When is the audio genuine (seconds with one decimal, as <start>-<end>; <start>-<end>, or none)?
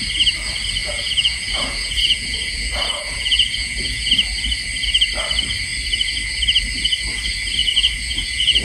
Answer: 0.0-0.8; 4.1-7.6